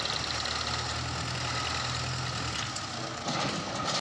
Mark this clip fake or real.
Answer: real